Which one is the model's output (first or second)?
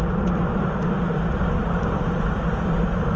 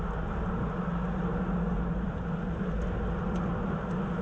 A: first